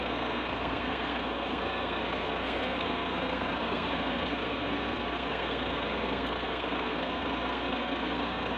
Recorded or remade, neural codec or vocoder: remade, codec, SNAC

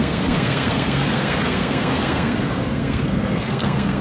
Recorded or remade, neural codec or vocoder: remade, codec, SNAC